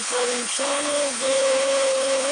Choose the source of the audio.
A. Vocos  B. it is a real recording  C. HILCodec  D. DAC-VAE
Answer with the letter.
C